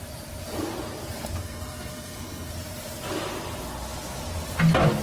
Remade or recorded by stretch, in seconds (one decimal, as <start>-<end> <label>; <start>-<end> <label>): 0.0-1.4 recorded; 1.4-2.5 remade; 2.5-5.0 recorded